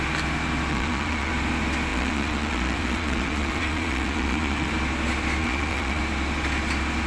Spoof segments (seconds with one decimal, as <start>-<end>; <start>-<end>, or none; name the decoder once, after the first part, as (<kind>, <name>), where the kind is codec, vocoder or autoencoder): 0.7-1.3 (vocoder, Vocos); 1.9-4.7; 5.4-6.0